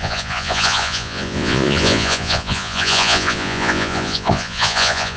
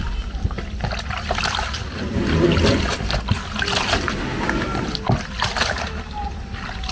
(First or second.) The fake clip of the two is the first